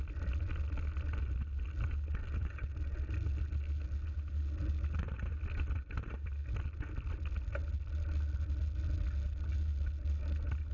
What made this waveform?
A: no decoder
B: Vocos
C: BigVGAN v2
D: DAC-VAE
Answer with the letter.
A